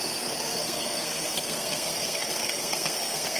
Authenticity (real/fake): fake